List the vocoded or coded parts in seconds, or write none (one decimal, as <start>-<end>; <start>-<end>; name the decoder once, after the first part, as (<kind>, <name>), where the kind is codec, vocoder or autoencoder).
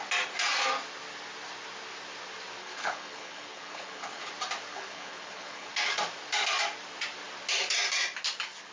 2.6-4.3 (codec, HILCodec); 4.7-5.7